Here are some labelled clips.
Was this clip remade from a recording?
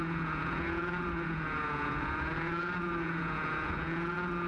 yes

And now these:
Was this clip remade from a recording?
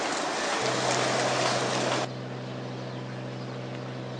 no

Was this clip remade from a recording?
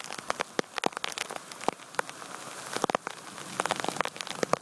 no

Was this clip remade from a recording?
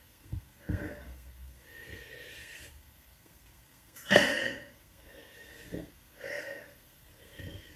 yes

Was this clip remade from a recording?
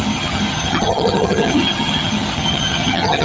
yes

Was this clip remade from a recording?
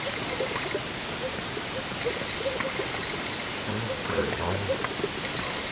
no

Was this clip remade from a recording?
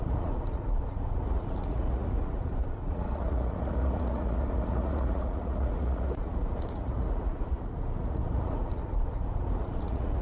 yes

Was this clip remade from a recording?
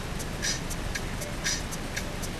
no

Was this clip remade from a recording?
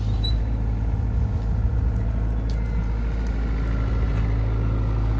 no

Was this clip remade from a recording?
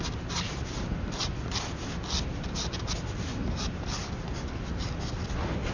no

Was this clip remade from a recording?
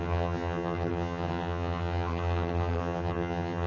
yes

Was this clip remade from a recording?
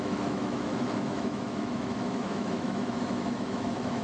yes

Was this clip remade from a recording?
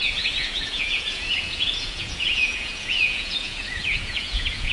yes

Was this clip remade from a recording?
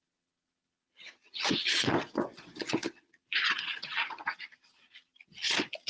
yes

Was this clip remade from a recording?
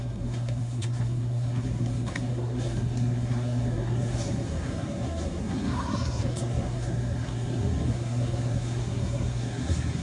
yes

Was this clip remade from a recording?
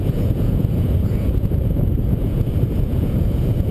yes